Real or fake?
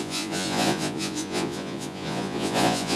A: fake